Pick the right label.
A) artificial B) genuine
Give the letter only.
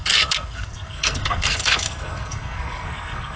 A